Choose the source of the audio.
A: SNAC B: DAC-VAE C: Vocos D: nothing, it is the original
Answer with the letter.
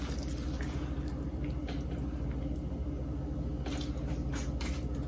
D